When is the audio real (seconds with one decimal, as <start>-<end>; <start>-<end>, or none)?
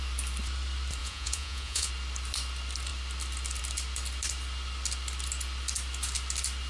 0.0-1.0; 1.9-6.7